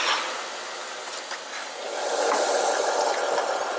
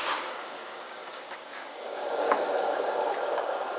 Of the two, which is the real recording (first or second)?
first